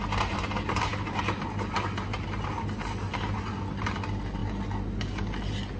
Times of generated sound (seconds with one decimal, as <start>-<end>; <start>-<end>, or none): none